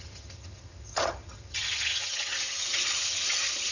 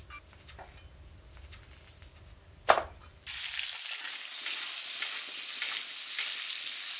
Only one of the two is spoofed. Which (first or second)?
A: first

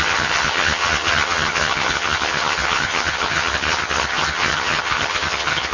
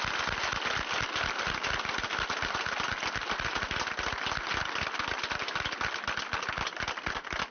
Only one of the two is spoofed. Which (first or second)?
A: first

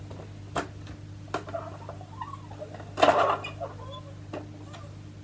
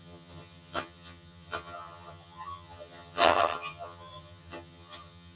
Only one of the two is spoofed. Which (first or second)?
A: second